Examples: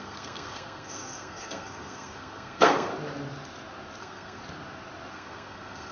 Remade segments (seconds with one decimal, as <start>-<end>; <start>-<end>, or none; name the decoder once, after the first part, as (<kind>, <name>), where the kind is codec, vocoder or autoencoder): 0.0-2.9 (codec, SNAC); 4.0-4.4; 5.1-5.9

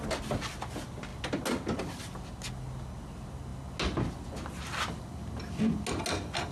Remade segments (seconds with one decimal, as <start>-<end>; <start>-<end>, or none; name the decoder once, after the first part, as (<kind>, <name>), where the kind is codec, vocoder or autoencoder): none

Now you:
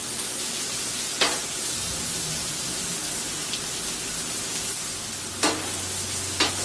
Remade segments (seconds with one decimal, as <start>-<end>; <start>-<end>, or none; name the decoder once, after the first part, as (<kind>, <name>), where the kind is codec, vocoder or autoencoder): none

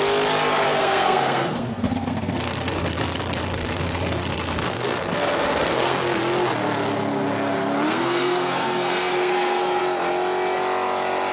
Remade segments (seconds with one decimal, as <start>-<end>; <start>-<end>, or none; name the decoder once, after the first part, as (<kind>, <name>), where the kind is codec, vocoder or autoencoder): 0.8-3.0 (codec, SNAC); 3.4-6.0; 7.9-9.8

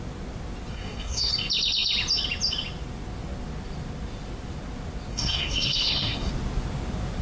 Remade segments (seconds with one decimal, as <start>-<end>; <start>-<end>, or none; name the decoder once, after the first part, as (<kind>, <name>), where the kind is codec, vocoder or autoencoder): 0.7-1.3 (codec, SNAC); 5.1-6.3

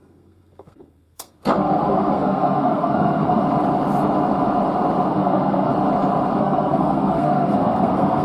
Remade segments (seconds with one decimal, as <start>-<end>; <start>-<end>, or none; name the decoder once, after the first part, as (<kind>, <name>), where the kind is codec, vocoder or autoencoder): 0.0-3.4 (codec, SNAC); 5.1-5.7; 6.4-8.2

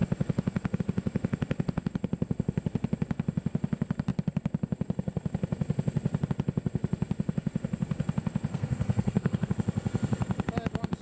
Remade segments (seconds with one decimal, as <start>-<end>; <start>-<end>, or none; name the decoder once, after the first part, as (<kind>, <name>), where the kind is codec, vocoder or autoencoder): 8.5-9.5 (codec, SNAC)

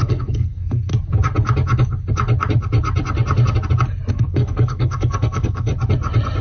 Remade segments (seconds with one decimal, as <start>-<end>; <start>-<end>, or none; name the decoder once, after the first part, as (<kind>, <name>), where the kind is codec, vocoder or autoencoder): 0.0-0.9 (codec, SNAC); 4.1-5.7